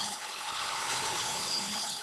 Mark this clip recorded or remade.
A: remade